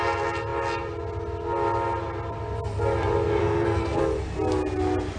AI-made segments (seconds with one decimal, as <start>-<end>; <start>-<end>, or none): 3.4-4.0